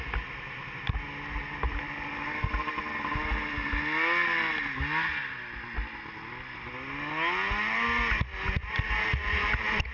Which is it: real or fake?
real